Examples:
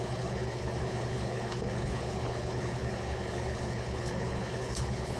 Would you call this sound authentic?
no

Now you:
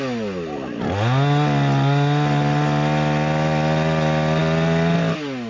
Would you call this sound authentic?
yes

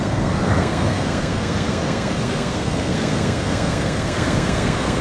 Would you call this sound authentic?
no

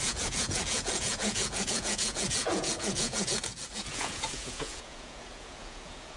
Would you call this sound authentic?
no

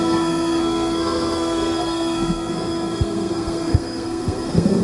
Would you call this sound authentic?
no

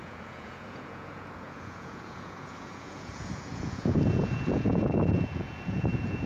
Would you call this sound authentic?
no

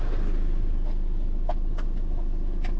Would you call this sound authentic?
yes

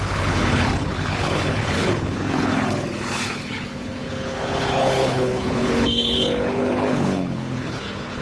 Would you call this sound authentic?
no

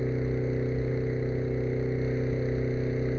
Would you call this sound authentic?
yes